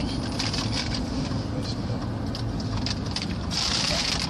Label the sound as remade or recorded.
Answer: recorded